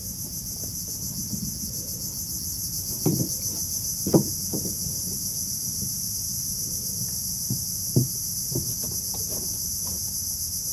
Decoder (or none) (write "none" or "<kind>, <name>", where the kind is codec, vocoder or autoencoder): none